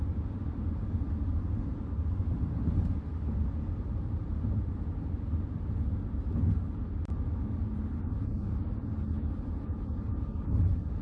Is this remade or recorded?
recorded